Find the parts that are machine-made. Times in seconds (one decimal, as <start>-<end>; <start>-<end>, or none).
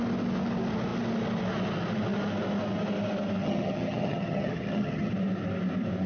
3.4-5.1